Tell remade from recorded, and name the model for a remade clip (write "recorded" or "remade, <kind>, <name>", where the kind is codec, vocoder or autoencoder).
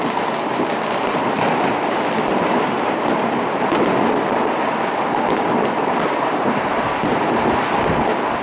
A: recorded